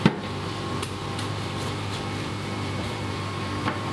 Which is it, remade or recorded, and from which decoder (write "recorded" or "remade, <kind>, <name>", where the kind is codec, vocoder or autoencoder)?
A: remade, vocoder, BigVGAN v2